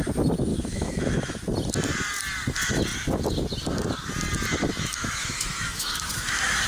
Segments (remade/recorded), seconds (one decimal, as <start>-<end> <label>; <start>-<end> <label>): 0.0-0.5 recorded; 0.5-1.4 remade; 1.4-4.6 recorded; 4.6-6.7 remade